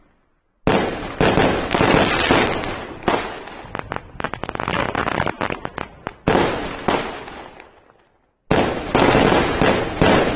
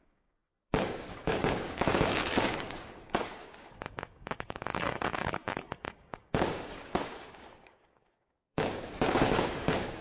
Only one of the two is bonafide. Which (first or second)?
first